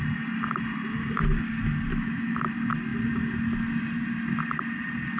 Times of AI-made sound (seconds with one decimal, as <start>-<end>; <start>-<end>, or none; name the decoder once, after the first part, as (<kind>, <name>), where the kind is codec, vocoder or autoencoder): 1.9-2.5 (autoencoder, DAC-VAE)